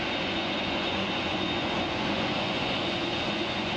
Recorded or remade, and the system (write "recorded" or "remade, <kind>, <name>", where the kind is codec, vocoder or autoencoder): remade, vocoder, Vocos